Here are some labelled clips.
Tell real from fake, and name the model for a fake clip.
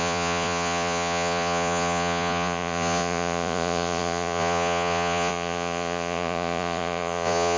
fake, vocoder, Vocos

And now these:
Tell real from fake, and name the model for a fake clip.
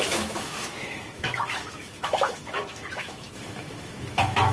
fake, autoencoder, DAC-VAE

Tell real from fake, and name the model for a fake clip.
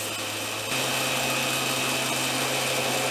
real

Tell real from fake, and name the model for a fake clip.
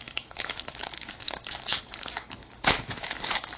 fake, autoencoder, DAC-VAE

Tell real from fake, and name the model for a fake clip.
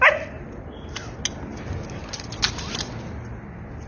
real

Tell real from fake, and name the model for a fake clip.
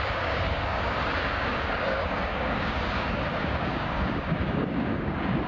fake, codec, DAC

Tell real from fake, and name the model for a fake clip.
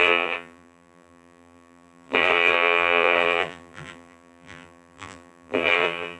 fake, vocoder, BigVGAN v2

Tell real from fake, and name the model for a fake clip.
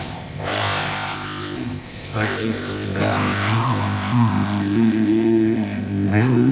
fake, codec, ZipCodec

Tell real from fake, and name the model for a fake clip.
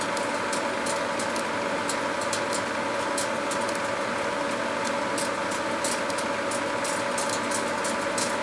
real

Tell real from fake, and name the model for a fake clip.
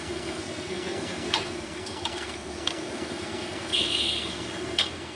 fake, codec, SNAC